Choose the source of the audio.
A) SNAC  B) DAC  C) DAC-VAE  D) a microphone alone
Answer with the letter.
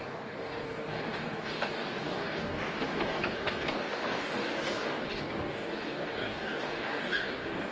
B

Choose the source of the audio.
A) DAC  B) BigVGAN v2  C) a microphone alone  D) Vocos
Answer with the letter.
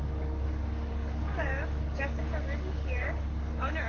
A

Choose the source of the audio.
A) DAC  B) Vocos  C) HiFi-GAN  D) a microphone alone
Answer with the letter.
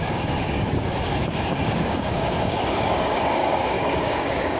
A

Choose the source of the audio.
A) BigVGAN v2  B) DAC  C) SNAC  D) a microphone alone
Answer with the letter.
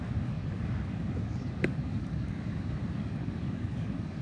B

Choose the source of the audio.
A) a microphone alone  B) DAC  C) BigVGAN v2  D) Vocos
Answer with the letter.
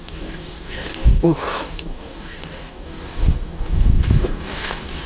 B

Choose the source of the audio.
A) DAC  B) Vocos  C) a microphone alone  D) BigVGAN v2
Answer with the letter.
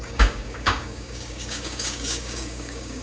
A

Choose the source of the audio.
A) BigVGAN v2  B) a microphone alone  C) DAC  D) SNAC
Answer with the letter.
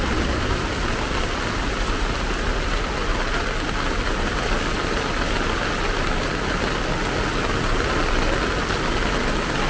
B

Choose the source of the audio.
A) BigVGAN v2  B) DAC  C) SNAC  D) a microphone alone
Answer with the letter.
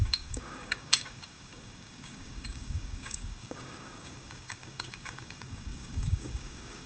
B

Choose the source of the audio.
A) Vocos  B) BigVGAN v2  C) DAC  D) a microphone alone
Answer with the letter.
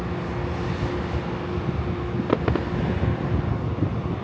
D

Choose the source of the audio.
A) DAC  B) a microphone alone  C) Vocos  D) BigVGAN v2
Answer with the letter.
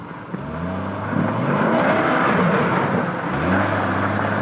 B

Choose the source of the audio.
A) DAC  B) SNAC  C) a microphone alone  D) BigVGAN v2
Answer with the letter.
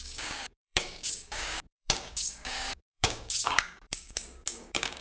A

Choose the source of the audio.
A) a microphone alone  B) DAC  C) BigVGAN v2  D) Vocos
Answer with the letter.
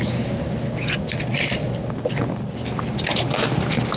A